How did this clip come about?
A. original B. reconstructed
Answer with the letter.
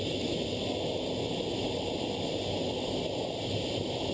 A